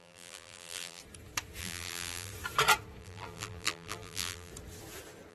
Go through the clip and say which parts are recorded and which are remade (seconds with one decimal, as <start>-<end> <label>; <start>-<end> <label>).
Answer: 0.0-1.0 remade; 1.0-1.6 recorded; 1.6-2.3 remade; 2.3-3.0 recorded; 3.0-4.5 remade; 4.5-5.3 recorded